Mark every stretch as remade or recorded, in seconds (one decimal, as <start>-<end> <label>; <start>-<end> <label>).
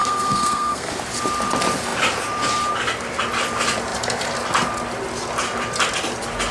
0.0-0.9 remade; 0.9-6.5 recorded